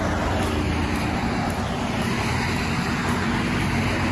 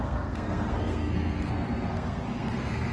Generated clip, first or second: second